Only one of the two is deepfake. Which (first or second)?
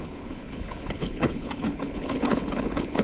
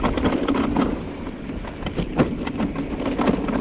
first